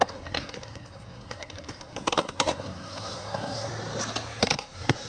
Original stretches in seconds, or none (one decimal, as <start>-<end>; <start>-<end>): 3.7-4.4

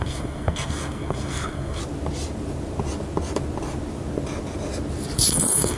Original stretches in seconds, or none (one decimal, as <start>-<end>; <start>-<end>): 1.8-5.3

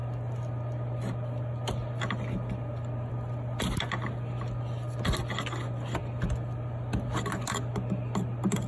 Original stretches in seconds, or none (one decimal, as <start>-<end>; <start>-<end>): 0.0-8.7